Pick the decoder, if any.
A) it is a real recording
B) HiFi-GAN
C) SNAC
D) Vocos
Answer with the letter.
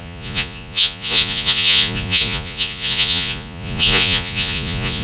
D